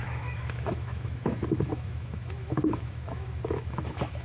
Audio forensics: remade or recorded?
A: remade